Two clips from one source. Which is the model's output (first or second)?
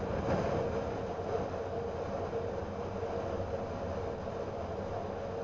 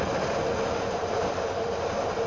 second